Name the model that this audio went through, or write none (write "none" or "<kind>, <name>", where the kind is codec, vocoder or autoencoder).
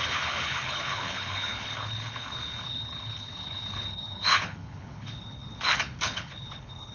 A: codec, HILCodec